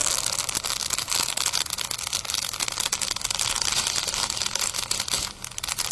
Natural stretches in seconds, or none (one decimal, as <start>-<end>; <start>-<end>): 0.0-5.9